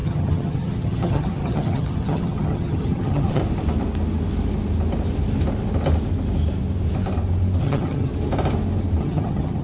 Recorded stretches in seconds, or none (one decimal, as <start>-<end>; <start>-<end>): 3.4-7.6; 8.1-9.0